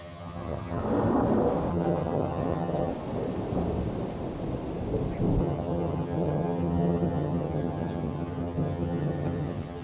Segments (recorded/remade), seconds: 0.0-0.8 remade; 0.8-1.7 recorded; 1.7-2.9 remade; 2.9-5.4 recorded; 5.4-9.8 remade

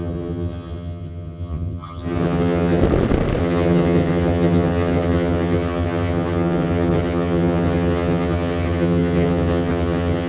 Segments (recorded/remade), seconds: 0.0-2.8 remade; 2.8-3.4 recorded; 3.4-10.3 remade

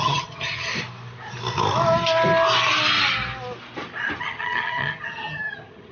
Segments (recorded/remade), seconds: 0.0-0.7 remade; 0.7-4.2 recorded; 4.2-5.9 remade

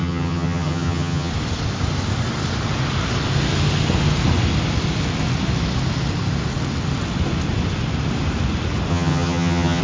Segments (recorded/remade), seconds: 0.0-1.3 remade; 1.3-8.9 recorded; 8.9-9.8 remade